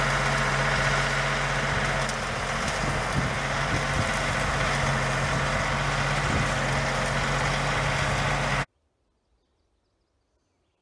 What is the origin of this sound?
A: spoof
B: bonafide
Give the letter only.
B